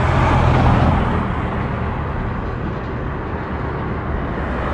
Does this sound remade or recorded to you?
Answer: recorded